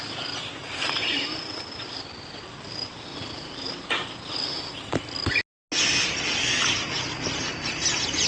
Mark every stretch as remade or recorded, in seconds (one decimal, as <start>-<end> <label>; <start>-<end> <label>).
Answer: 0.0-8.3 recorded